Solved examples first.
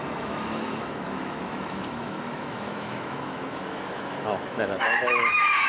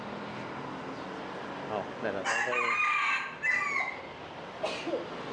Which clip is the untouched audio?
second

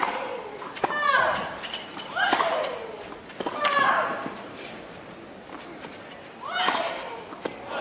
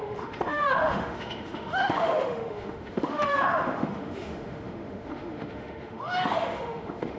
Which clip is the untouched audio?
first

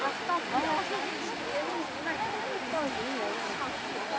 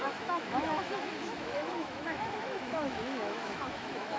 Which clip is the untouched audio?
first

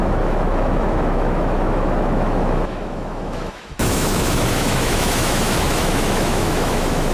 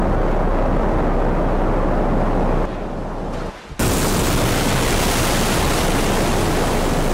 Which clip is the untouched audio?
second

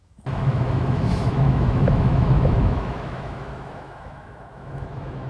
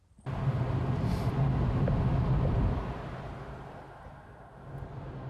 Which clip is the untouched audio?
second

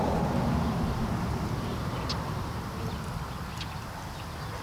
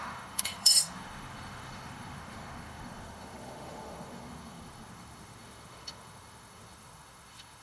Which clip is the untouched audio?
first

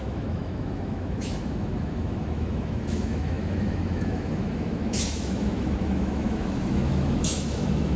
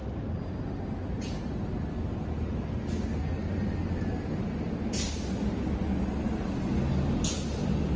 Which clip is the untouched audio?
second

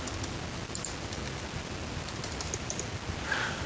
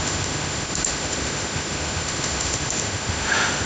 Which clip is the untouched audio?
first